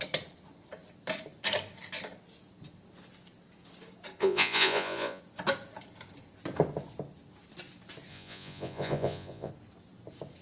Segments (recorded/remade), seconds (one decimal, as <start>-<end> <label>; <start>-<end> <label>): 0.0-4.2 recorded; 4.2-5.2 remade; 5.2-8.1 recorded; 8.1-9.5 remade; 9.5-10.4 recorded